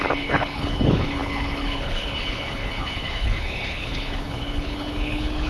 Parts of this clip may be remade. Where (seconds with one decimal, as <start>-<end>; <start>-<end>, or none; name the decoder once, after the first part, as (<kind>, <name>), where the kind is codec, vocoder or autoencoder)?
0.0-5.5 (codec, HILCodec)

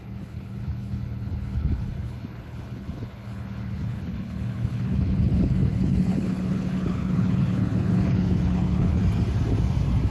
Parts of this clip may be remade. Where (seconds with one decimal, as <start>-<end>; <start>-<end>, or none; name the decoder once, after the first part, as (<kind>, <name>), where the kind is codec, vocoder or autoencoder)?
0.0-9.0 (codec, HILCodec)

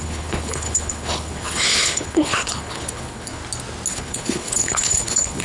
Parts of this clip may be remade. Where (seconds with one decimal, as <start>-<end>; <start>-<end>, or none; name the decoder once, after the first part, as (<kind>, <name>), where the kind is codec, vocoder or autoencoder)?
0.0-3.4 (codec, HILCodec); 3.9-5.4

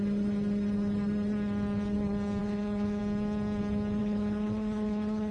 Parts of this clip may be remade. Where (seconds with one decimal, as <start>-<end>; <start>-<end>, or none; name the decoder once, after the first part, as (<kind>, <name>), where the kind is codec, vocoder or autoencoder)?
2.4-3.0 (codec, HILCodec); 4.0-5.3

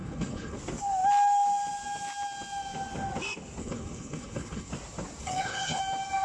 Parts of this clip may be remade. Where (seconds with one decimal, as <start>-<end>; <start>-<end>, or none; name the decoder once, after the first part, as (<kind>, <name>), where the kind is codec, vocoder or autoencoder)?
0.0-0.6 (codec, HILCodec); 3.6-4.7; 5.2-5.8

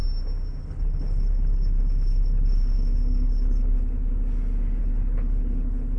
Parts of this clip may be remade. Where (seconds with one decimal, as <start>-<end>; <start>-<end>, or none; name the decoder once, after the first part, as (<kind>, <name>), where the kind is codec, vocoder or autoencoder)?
0.6-4.1 (codec, HILCodec); 4.8-6.0

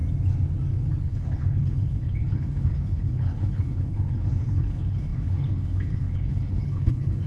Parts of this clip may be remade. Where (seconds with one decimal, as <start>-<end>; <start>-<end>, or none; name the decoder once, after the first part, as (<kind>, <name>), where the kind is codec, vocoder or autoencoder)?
1.0-7.3 (codec, HILCodec)

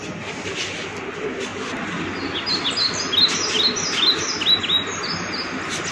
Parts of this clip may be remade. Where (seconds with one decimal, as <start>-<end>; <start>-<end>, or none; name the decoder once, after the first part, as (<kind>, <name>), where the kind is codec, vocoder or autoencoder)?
none